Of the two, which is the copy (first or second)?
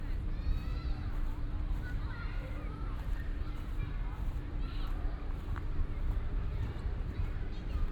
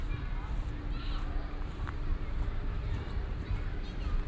first